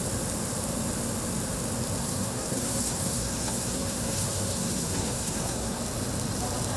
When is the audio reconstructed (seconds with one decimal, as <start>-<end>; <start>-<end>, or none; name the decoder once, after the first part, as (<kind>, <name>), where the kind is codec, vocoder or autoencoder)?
2.0-5.8 (codec, SNAC)